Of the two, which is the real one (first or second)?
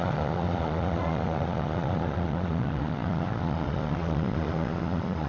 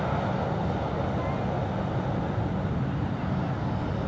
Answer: second